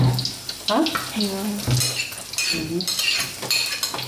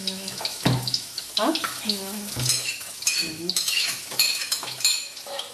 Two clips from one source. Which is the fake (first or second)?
second